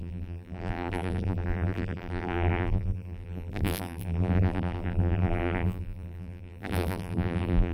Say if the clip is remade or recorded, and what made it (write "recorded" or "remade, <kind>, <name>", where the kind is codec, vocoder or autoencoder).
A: remade, vocoder, BigVGAN v2